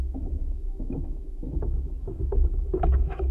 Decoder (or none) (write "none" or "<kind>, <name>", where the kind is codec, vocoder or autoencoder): autoencoder, DAC-VAE